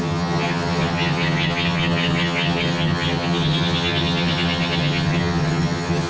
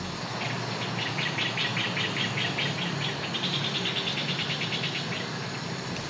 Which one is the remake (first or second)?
first